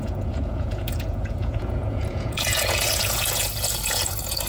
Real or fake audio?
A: fake